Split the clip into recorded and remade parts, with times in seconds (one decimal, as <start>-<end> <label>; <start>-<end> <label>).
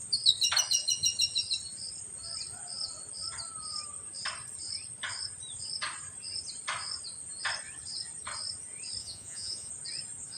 0.0-9.0 recorded; 9.0-9.7 remade; 9.7-10.4 recorded